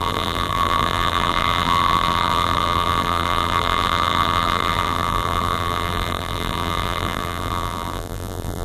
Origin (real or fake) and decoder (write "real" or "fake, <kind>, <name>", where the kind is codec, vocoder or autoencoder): fake, vocoder, BigVGAN v2